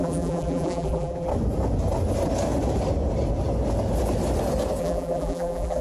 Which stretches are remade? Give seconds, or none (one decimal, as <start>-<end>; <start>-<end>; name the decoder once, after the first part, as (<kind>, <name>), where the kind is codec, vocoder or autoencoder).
0.0-1.3 (vocoder, BigVGAN v2); 4.8-5.8